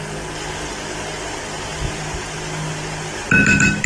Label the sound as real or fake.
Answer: real